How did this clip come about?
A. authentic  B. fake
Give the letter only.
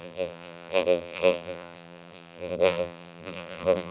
B